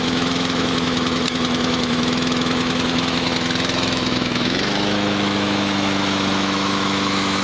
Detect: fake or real fake